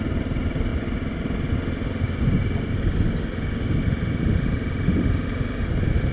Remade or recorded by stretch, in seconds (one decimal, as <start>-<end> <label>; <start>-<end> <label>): 0.0-6.1 recorded